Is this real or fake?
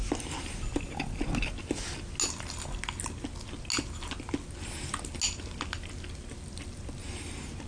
real